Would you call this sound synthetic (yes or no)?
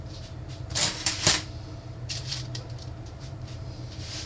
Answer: yes